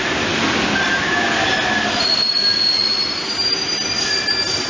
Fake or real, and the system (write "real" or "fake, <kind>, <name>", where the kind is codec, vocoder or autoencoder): real